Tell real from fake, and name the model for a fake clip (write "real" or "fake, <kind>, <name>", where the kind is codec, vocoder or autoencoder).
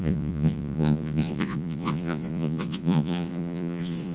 fake, vocoder, Vocos